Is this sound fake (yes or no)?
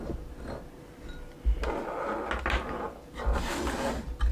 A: no